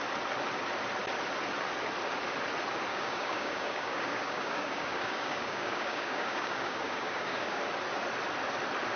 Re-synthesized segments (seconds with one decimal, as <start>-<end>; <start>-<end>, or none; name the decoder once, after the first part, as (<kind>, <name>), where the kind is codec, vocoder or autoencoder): 2.9-7.6 (codec, DAC)